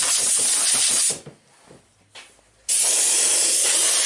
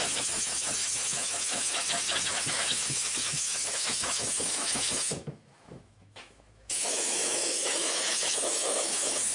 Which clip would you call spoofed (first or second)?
second